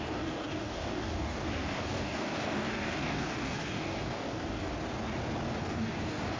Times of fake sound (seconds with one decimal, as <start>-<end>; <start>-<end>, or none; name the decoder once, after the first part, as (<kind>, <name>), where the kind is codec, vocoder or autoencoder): 0.0-4.7 (codec, DAC); 5.6-6.4